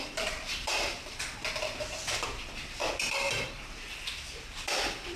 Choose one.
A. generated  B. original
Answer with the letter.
A